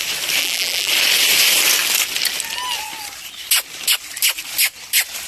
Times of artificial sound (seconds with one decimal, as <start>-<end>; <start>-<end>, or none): 0.4-0.9